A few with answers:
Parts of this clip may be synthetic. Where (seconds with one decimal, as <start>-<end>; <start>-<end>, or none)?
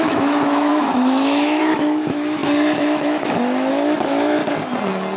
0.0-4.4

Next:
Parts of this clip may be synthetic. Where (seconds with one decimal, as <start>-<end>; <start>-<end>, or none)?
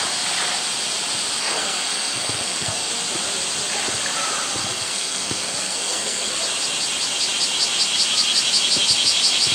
1.4-2.9; 4.6-6.4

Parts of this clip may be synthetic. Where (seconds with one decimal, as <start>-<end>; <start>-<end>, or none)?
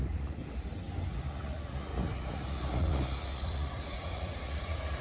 0.0-0.4; 1.1-5.0